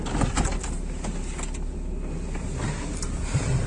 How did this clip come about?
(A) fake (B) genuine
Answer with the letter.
B